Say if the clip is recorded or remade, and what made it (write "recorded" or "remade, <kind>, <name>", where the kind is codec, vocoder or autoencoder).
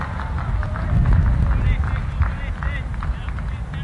recorded